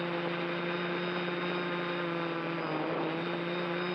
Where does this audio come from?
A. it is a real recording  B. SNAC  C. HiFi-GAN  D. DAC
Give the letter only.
A